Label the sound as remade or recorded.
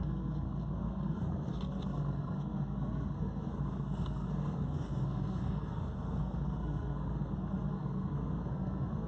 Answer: remade